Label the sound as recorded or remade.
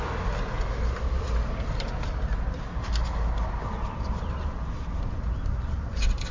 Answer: recorded